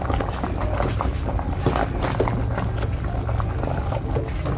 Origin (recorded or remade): recorded